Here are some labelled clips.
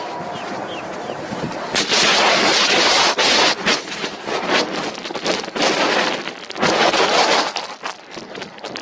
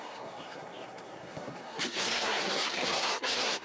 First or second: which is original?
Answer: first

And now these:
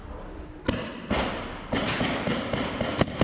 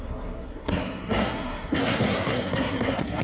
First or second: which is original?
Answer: first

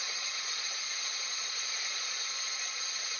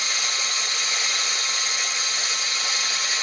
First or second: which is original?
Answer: second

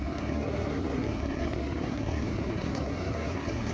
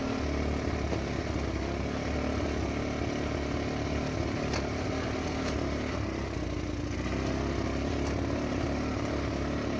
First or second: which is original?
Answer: second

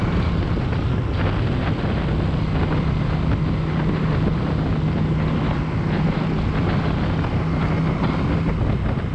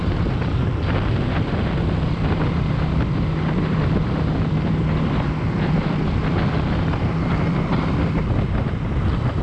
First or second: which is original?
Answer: first